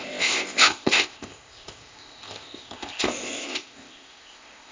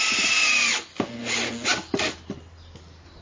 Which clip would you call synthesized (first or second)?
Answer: first